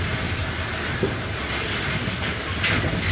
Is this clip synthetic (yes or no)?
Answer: no